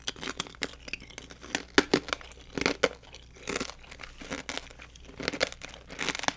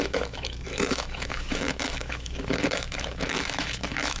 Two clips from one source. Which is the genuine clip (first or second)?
first